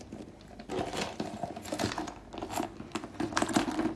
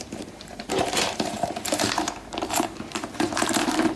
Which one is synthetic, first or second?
second